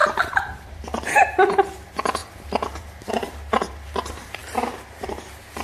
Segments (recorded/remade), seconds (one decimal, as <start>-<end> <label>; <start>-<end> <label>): 0.0-0.8 remade; 0.8-2.2 recorded; 2.2-3.1 remade; 3.1-4.4 recorded; 4.4-5.1 remade; 5.1-5.6 recorded